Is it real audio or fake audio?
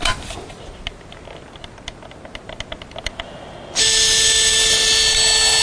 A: real